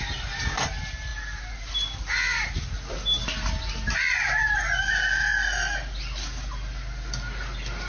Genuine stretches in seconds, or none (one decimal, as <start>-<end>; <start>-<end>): 0.0-7.9